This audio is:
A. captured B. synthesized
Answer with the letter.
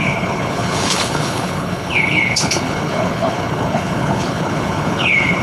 B